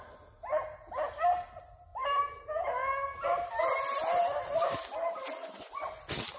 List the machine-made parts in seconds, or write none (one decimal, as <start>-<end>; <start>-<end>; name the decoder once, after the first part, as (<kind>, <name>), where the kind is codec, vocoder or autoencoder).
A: 5.4-6.0 (vocoder, Vocos)